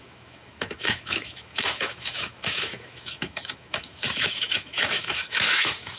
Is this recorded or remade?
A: remade